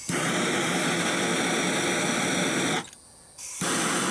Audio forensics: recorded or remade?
recorded